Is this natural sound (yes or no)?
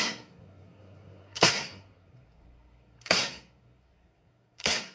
no